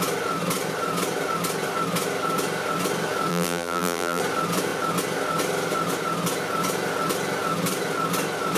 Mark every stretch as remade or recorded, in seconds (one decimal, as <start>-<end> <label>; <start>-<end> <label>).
0.0-3.3 recorded; 3.3-4.2 remade; 4.2-8.6 recorded